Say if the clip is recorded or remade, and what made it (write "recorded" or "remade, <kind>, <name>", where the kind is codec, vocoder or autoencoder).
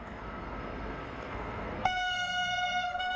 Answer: remade, codec, SNAC